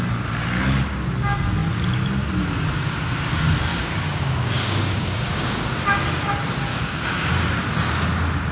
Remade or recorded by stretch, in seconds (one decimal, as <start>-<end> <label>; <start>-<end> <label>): 0.0-3.7 recorded; 3.7-5.8 remade; 5.8-6.7 recorded; 6.7-7.3 remade; 7.3-8.5 recorded